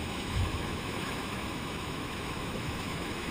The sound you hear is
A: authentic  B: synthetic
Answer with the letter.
B